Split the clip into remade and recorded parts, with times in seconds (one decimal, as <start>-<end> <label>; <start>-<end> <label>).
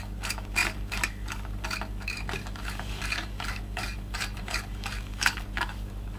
0.0-6.2 remade